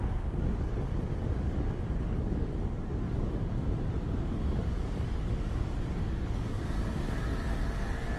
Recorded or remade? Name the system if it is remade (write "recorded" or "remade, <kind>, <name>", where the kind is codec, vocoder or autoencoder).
remade, codec, DAC